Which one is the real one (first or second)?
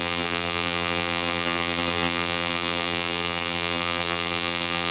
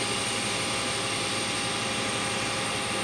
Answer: second